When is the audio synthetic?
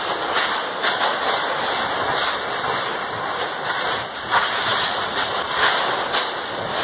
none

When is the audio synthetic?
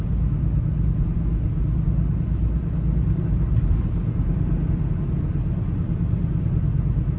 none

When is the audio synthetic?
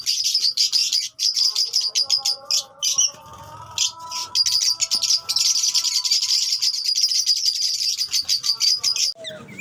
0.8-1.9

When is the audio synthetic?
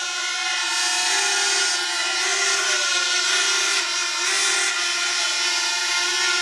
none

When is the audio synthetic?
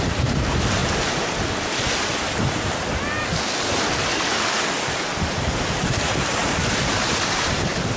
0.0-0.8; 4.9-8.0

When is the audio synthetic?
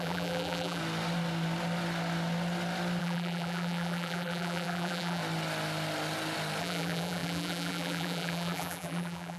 0.0-0.8; 3.0-5.2; 6.6-9.4